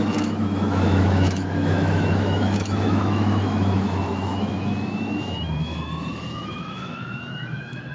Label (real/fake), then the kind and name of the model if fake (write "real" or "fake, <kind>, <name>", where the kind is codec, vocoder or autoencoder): fake, autoencoder, DAC-VAE